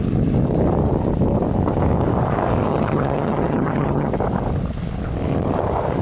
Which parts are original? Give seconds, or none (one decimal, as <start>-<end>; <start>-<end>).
0.0-2.7; 4.1-6.0